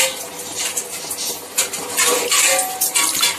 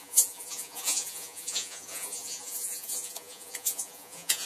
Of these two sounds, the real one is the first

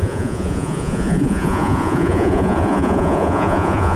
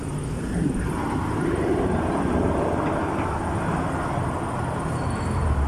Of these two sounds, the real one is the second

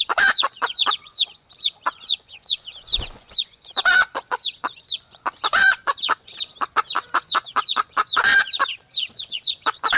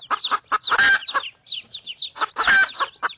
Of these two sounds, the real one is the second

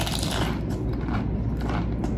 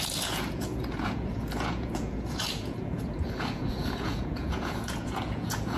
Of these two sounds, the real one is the first